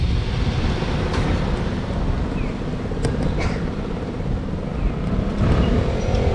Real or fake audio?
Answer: real